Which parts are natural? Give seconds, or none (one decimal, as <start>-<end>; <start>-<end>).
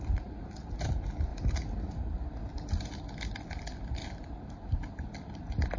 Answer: 0.0-2.5; 3.0-4.0; 5.1-5.8